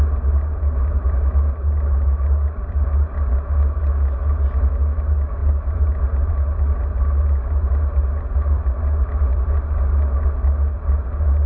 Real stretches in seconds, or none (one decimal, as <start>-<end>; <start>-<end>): 0.0-11.5